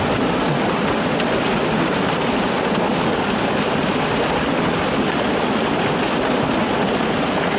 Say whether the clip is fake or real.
real